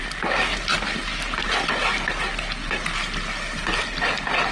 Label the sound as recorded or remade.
recorded